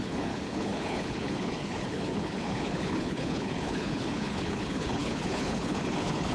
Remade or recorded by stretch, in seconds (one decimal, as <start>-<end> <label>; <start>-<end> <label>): 0.0-6.3 remade